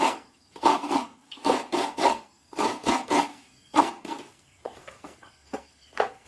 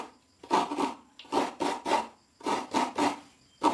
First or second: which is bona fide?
second